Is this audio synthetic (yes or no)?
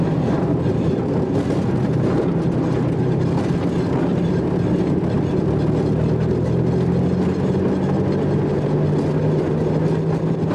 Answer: no